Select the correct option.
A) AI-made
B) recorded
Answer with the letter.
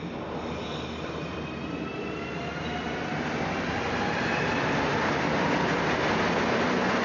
B